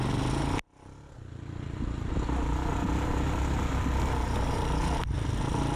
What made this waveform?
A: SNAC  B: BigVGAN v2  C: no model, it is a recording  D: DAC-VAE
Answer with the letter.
C